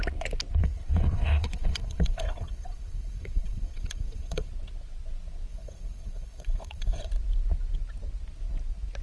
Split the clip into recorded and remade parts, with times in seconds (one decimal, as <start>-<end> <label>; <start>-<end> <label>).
0.0-0.6 recorded; 0.6-4.5 remade; 4.5-5.5 recorded; 5.5-7.1 remade; 7.1-9.0 recorded